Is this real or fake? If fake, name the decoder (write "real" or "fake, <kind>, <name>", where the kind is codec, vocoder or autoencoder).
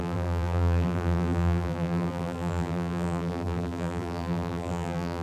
fake, vocoder, BigVGAN v2